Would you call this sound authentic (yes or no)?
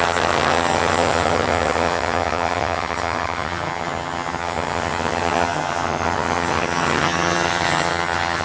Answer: no